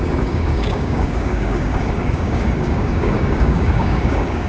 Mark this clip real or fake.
fake